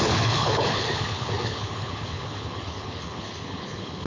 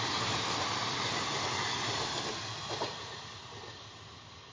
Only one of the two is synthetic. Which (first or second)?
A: first